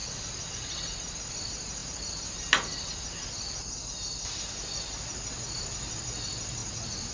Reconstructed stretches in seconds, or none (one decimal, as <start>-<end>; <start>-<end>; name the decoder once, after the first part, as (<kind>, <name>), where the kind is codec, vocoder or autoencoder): none